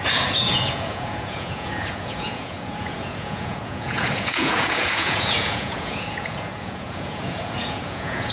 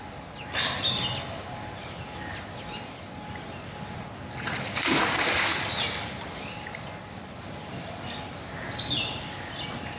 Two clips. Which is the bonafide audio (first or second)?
second